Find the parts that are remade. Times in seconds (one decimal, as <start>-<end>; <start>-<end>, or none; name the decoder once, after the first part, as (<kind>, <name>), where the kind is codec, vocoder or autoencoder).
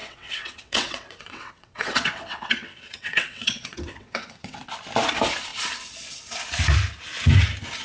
0.0-4.7 (vocoder, WaveNeXt)